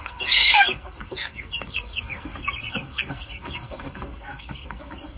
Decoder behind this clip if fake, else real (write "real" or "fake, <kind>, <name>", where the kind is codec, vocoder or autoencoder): fake, codec, SNAC